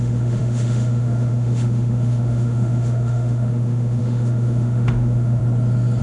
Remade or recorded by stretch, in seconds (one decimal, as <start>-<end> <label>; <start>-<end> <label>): 0.0-5.4 remade; 5.4-6.0 recorded